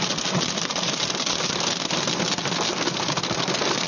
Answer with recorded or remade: recorded